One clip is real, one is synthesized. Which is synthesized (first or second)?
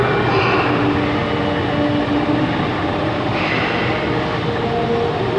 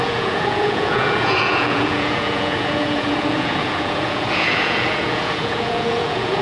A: second